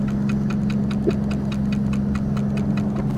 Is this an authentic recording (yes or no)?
yes